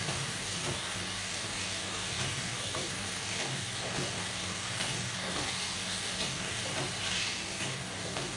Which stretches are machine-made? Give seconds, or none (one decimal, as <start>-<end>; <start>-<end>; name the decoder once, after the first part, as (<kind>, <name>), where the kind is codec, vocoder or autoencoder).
0.0-6.6 (codec, DAC); 7.1-8.4